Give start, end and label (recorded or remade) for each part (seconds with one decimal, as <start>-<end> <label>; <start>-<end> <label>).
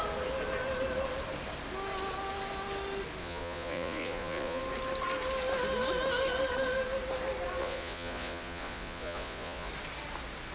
0.0-3.2 recorded; 3.2-4.6 remade; 4.6-7.6 recorded; 7.6-9.7 remade; 9.7-10.5 recorded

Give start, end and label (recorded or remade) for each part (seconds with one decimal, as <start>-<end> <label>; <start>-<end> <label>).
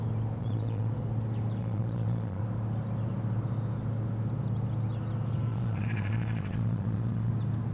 0.0-0.4 recorded; 0.4-0.9 remade; 0.9-1.6 recorded; 1.6-2.4 remade; 2.4-5.5 recorded; 5.5-7.3 remade; 7.3-7.7 recorded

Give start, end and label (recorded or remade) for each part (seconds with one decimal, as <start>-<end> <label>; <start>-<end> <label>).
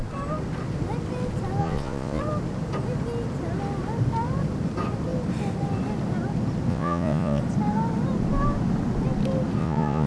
0.0-1.6 recorded; 1.6-2.2 remade; 2.2-6.7 recorded; 6.7-7.4 remade; 7.4-9.6 recorded; 9.6-10.1 remade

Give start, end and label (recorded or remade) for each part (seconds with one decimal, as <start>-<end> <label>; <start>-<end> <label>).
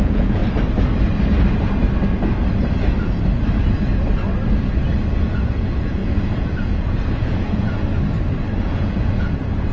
0.0-0.4 remade; 0.4-5.2 recorded; 5.2-7.8 remade; 7.8-8.6 recorded; 8.6-9.7 remade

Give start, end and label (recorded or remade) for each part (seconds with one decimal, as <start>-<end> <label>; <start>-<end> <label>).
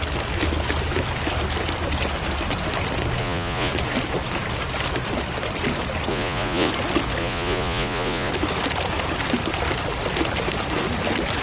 0.0-3.2 recorded; 3.2-3.7 remade; 3.7-6.1 recorded; 6.1-6.7 remade; 6.7-7.2 recorded; 7.2-8.3 remade; 8.3-11.4 recorded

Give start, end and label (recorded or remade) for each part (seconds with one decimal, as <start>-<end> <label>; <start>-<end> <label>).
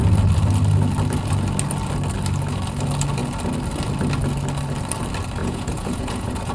0.0-5.4 recorded; 5.4-6.5 remade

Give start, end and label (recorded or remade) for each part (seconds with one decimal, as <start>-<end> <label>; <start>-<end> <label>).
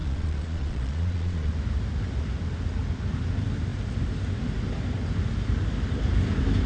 0.0-1.5 remade; 1.5-6.7 recorded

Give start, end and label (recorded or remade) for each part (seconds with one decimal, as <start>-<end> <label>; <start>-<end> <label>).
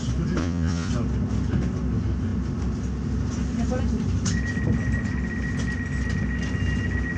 0.0-0.4 recorded; 0.4-0.9 remade; 0.9-7.2 recorded